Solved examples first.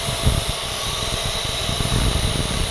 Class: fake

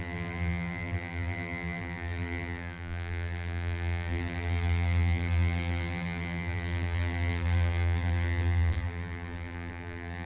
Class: fake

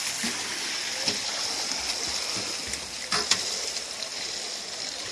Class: real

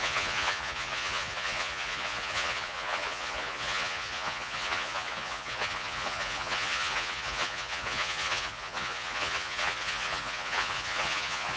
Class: fake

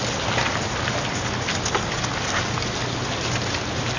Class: real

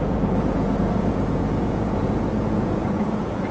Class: fake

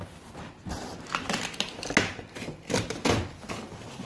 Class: real